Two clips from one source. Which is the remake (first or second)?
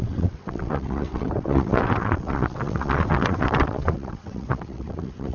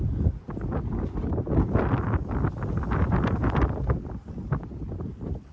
first